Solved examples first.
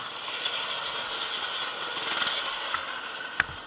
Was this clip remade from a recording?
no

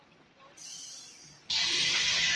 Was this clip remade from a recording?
no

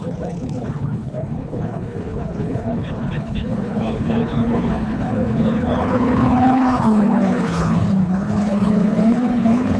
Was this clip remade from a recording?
yes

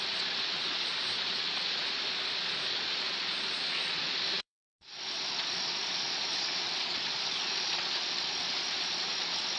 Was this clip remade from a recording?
yes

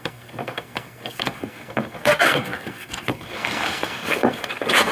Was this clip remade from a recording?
yes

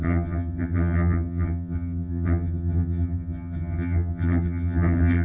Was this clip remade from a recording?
yes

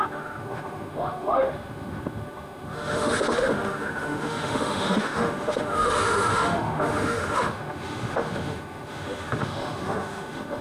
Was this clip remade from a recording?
yes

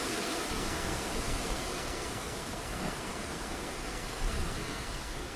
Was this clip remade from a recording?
yes